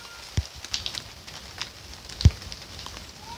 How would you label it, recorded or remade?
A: recorded